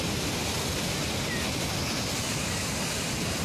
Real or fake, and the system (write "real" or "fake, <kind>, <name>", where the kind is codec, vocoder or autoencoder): real